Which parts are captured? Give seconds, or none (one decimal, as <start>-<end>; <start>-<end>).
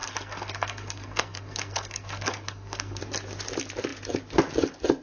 3.0-5.0